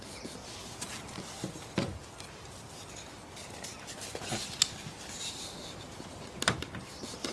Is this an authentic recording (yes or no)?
yes